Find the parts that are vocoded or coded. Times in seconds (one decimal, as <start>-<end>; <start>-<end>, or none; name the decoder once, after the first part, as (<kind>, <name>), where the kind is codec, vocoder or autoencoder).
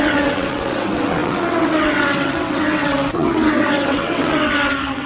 0.0-5.1 (vocoder, WaveNeXt)